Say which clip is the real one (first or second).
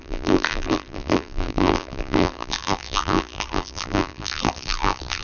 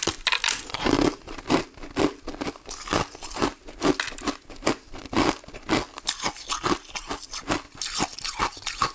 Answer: second